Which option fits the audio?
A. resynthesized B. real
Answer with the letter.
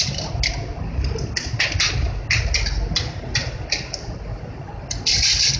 B